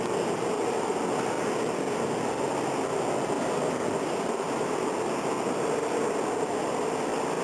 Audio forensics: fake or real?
real